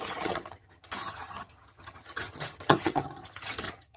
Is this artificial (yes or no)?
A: yes